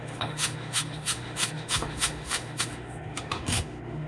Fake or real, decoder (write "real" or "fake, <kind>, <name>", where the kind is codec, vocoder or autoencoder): fake, autoencoder, DAC-VAE